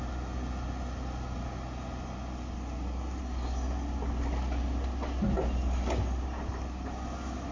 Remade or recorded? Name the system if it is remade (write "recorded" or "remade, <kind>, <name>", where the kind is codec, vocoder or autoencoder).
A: recorded